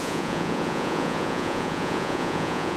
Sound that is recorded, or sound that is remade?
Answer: remade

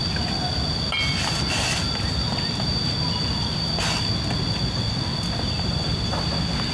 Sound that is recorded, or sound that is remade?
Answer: recorded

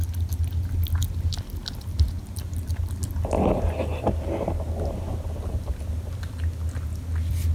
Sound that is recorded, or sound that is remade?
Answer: recorded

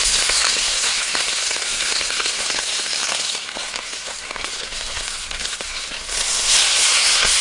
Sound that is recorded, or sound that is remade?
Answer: remade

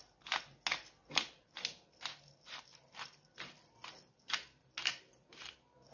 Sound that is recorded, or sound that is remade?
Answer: recorded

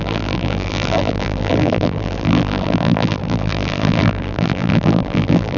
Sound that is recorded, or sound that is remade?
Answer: remade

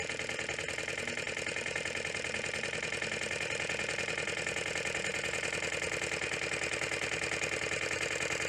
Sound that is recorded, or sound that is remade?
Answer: recorded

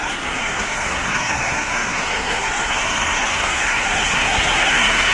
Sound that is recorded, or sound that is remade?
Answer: remade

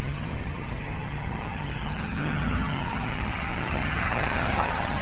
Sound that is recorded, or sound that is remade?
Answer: remade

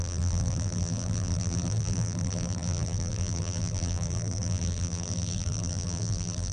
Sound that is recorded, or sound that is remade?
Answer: remade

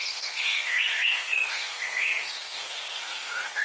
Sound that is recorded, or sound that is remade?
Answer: remade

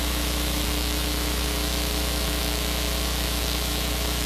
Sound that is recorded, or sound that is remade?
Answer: remade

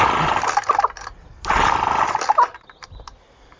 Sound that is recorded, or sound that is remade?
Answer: recorded